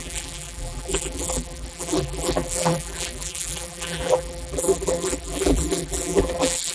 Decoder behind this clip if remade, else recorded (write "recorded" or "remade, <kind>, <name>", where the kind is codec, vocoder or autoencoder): remade, vocoder, BigVGAN v2